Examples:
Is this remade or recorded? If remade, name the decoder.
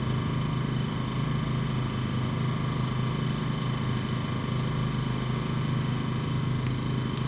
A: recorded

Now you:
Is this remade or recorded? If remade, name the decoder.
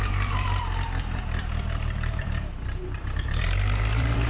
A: remade, vocoder, BigVGAN v2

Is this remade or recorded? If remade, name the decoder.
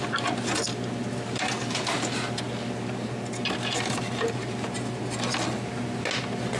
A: recorded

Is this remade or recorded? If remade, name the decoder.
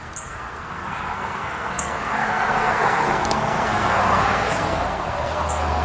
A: remade, codec, SNAC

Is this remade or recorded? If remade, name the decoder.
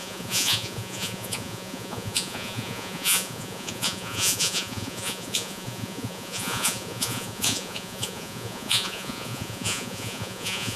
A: remade, vocoder, Vocos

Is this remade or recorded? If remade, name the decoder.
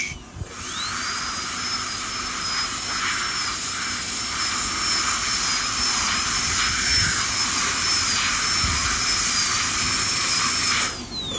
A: recorded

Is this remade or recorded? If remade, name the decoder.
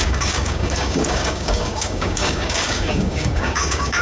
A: remade, codec, DAC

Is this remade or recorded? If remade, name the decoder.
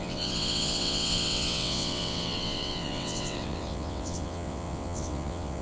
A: remade, vocoder, WaveNeXt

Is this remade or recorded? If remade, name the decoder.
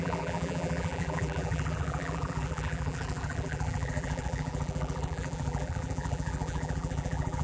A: remade, vocoder, BigVGAN v2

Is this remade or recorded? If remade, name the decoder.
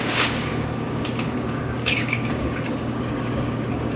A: remade, codec, DAC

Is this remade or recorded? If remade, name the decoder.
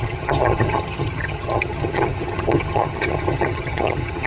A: remade, vocoder, HiFi-GAN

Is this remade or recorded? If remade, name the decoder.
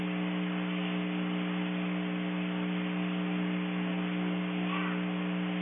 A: recorded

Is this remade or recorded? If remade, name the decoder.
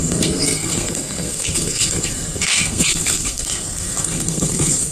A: remade, codec, SNAC